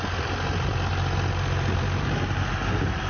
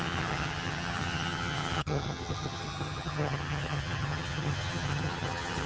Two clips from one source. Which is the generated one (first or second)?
second